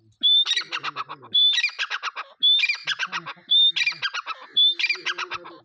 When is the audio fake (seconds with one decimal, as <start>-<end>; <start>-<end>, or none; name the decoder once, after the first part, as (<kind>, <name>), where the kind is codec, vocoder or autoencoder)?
none